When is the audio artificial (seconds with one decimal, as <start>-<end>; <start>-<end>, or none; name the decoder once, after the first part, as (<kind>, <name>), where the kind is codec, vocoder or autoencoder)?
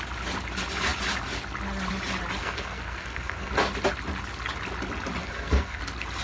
2.4-3.5 (codec, SNAC); 5.2-5.8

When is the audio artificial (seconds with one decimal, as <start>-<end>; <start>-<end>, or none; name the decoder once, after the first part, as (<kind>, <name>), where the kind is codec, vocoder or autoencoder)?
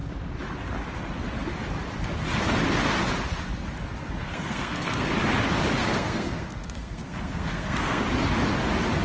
4.2-5.1 (codec, SNAC); 5.8-8.0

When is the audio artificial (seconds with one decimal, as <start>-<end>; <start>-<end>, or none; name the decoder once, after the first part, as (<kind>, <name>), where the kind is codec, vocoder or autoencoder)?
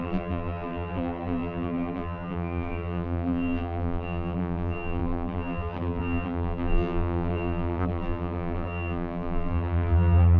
0.0-10.4 (vocoder, BigVGAN v2)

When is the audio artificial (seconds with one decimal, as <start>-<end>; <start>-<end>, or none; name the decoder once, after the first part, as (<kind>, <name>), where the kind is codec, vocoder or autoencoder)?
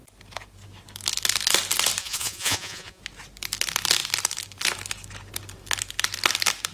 2.0-3.0 (vocoder, Vocos)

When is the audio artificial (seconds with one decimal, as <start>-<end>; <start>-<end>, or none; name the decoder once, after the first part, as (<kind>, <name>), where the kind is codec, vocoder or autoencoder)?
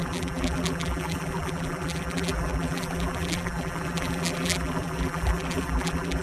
0.0-6.2 (vocoder, BigVGAN v2)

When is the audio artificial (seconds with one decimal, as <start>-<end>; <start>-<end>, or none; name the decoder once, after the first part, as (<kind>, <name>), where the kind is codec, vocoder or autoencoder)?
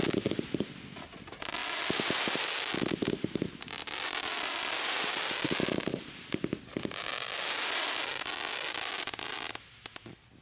1.6-2.5 (vocoder, BigVGAN v2); 3.8-6.6; 8.1-9.3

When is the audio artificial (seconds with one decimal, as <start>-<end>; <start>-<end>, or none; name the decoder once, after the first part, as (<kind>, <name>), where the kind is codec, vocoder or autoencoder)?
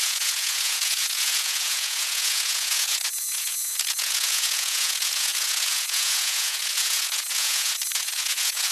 0.0-8.7 (vocoder, Vocos)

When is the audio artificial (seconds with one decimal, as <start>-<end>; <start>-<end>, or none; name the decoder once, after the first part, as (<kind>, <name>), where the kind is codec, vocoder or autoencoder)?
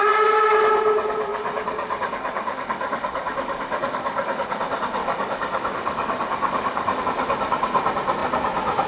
1.3-4.6 (codec, DAC); 5.0-7.0